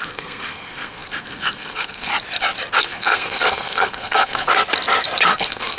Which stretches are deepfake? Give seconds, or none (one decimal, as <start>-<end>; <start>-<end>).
0.0-2.1; 2.8-4.5; 5.3-5.8